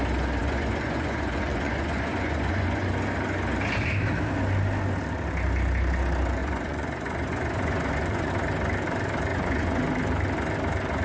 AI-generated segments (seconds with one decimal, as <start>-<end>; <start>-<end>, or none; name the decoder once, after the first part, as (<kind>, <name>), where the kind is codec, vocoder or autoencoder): 0.4-2.9 (vocoder, Vocos); 6.4-8.3; 9.3-9.8